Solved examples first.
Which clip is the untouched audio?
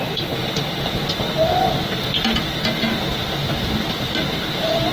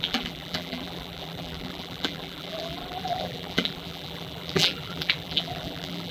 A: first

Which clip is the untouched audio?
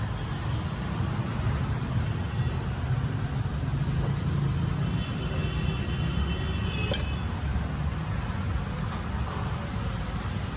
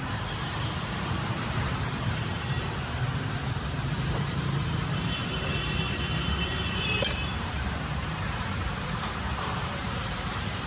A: first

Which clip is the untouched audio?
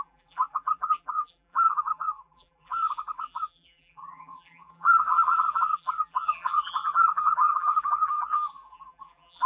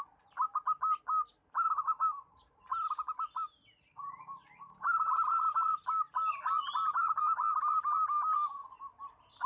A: second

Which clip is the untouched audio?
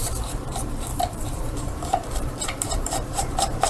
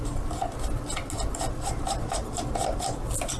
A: second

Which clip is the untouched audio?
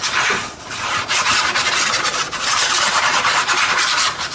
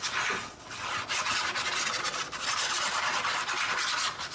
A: second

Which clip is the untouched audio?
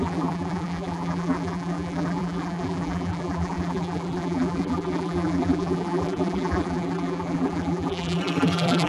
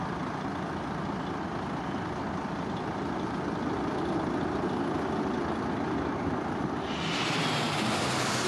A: second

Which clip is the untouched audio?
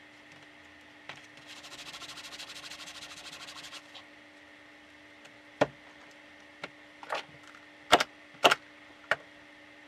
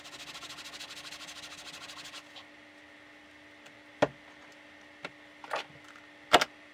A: second